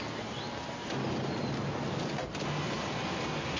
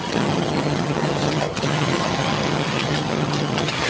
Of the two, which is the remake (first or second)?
second